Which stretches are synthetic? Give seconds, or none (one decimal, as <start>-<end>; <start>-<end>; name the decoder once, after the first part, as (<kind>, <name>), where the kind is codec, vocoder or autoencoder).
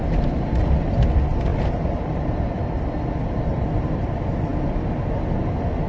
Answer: 1.5-3.9 (vocoder, BigVGAN v2)